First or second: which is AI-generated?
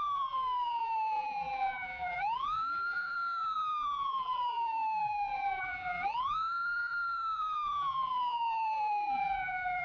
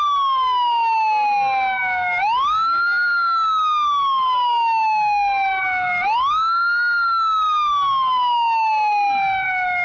first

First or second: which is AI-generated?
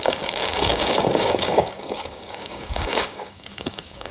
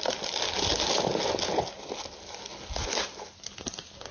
first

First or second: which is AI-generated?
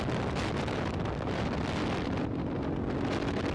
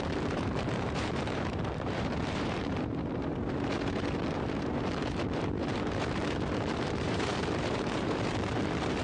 second